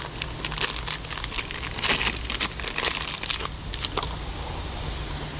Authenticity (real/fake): real